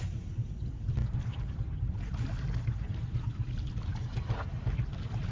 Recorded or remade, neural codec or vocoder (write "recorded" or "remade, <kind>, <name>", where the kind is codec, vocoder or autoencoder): recorded